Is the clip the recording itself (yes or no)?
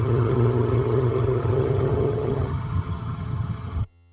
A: no